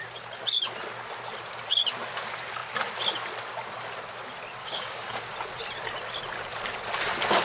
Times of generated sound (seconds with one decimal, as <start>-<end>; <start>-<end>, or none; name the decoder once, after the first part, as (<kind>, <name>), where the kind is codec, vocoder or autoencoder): 4.6-5.2 (codec, DAC)